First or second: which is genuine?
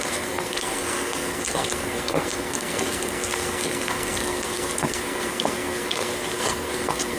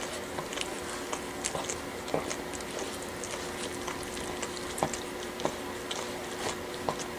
second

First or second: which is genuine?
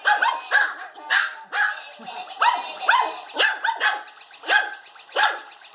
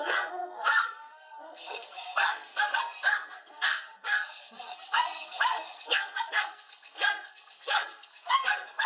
first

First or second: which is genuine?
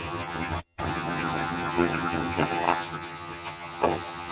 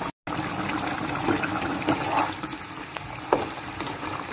second